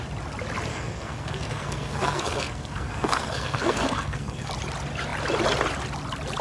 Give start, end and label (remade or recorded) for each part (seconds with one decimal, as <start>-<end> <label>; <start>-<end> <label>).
0.0-0.7 recorded; 0.7-4.5 remade; 4.5-6.4 recorded